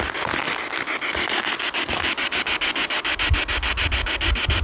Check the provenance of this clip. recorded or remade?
recorded